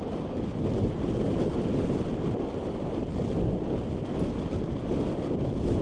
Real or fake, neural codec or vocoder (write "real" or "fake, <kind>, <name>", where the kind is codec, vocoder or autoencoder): real